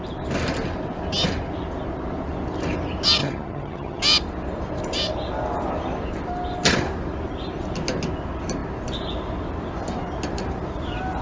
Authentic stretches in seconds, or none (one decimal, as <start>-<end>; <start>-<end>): 0.0-3.2; 4.0-11.2